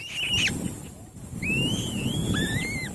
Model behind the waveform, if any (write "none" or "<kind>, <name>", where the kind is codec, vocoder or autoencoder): none